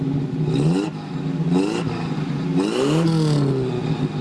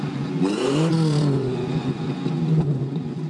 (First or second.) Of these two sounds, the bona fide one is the first